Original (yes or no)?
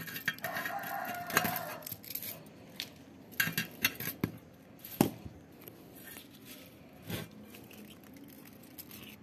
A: yes